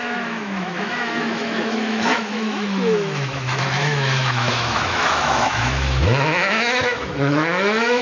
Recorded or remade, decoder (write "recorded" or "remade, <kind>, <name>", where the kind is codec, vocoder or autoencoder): remade, autoencoder, DAC-VAE